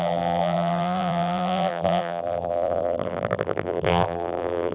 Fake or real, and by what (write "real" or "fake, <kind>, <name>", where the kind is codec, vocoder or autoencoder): fake, vocoder, BigVGAN v2